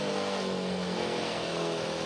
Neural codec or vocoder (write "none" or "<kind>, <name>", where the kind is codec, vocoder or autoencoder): codec, SNAC